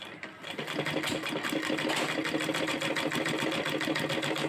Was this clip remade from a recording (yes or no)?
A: no